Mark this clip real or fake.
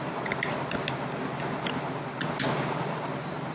real